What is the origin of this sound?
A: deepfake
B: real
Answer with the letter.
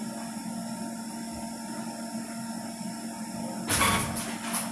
B